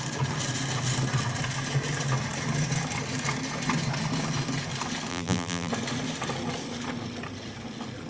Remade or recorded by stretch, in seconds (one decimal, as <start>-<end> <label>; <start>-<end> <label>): 0.0-5.1 recorded; 5.1-5.7 remade; 5.7-8.1 recorded